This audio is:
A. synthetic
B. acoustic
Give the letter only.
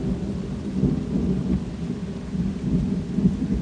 B